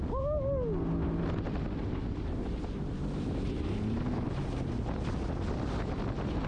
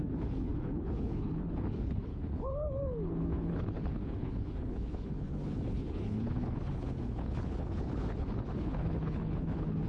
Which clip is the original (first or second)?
first